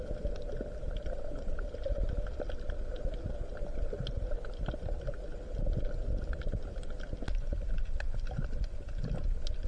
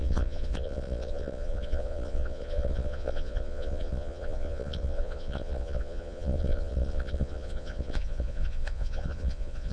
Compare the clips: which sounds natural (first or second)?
first